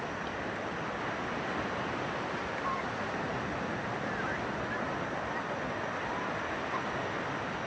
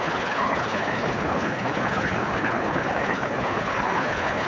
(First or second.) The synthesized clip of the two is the second